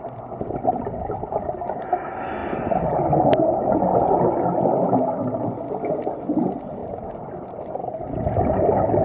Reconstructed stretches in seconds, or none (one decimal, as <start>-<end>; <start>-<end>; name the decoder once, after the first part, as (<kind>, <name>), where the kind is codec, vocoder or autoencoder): none